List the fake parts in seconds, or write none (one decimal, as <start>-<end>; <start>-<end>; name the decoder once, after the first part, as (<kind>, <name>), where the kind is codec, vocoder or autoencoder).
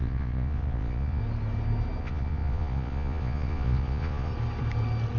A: 0.0-1.2 (vocoder, Vocos); 2.0-4.3